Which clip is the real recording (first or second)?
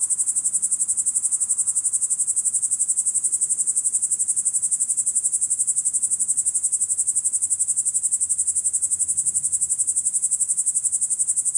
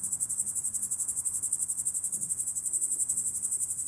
first